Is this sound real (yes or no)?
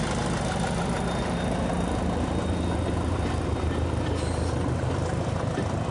yes